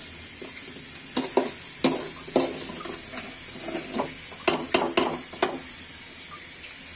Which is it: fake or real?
real